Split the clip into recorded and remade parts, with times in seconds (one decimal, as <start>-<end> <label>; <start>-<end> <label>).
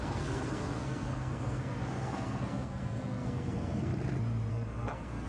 0.0-3.9 remade; 3.9-4.5 recorded; 4.5-5.3 remade